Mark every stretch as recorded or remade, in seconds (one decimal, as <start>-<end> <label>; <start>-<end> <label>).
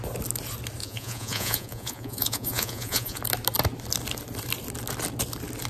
0.0-0.8 recorded; 0.8-3.2 remade; 3.2-5.7 recorded